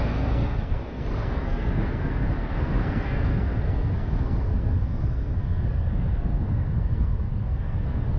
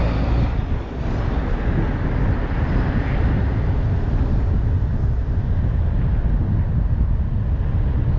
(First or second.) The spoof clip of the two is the first